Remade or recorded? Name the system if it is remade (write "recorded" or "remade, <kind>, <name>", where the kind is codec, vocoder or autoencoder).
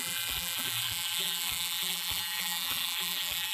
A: remade, vocoder, BigVGAN v2